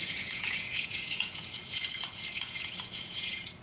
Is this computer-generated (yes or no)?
yes